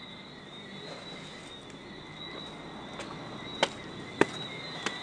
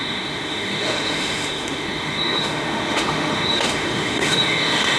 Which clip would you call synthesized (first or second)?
second